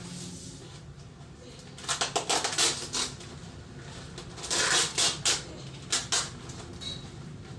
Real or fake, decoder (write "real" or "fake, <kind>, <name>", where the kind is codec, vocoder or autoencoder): real